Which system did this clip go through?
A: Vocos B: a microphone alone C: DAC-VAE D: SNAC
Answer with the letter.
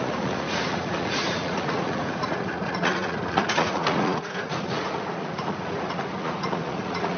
A